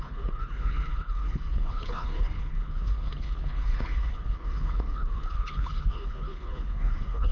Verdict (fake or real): fake